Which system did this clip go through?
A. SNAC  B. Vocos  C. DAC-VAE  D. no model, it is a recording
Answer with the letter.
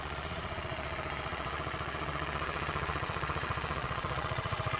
B